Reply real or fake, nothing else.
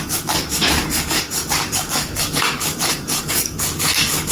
fake